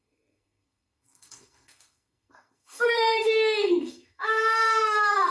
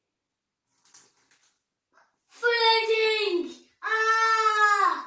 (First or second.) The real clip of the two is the second